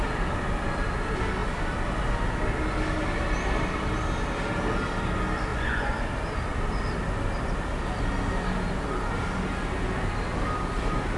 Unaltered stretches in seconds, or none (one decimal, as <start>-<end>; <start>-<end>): 0.0-5.5; 6.1-11.2